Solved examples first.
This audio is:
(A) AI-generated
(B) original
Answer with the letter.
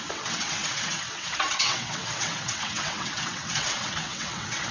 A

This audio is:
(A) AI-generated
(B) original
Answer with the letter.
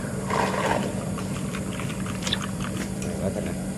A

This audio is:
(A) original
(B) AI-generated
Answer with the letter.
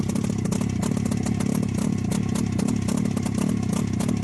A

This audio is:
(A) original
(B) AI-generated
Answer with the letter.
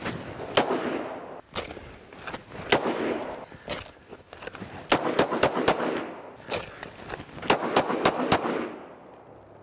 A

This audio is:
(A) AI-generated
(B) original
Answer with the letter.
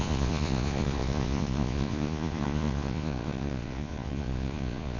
A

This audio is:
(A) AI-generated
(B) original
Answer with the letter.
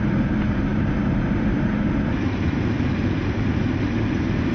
A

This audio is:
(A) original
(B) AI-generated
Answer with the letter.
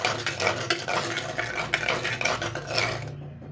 A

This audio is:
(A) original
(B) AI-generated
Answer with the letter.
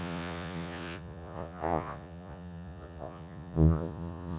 B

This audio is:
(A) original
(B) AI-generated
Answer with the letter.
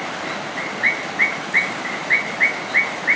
A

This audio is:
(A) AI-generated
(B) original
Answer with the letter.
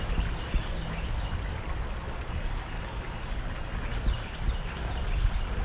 B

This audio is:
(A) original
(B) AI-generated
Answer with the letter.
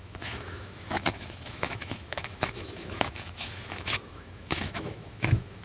B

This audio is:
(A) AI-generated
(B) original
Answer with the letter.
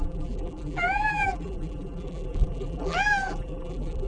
A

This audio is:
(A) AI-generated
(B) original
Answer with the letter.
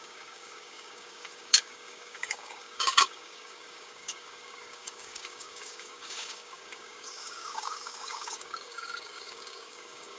A